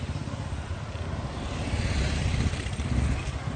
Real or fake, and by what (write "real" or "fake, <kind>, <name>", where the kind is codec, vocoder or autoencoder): real